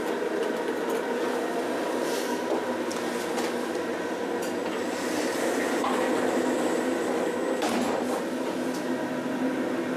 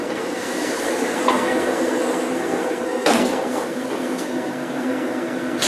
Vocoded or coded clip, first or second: second